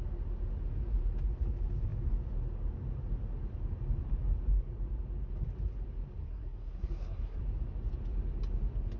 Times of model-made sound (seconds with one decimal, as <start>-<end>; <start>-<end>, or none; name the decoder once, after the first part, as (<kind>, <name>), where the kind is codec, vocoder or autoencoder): 6.2-7.4 (codec, SNAC)